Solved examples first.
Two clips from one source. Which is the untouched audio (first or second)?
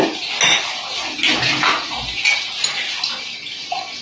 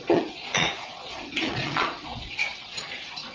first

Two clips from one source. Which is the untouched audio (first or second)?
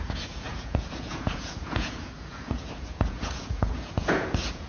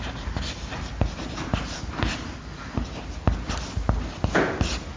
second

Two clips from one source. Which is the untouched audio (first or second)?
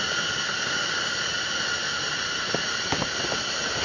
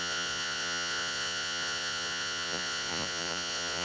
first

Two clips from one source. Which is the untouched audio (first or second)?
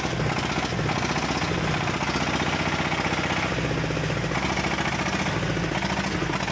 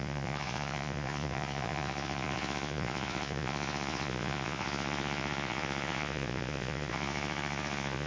first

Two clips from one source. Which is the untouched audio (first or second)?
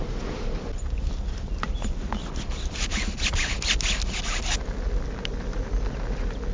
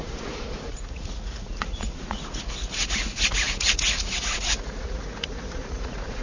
first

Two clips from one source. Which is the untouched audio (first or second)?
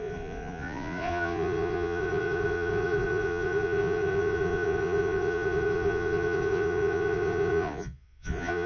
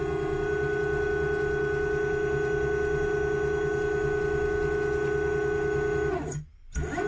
second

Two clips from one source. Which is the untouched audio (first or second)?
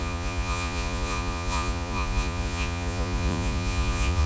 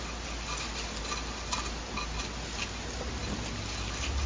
second